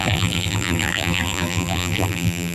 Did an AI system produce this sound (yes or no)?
yes